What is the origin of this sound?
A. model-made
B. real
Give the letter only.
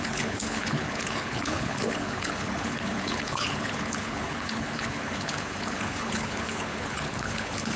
A